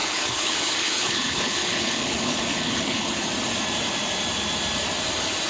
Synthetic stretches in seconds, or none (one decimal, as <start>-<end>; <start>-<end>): 0.0-3.3